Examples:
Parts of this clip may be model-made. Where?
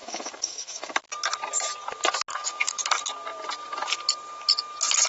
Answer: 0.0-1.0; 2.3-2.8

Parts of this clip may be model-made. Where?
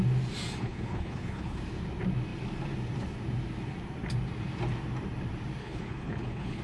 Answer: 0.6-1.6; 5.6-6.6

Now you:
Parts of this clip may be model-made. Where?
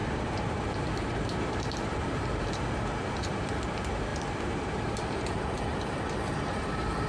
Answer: 0.0-7.1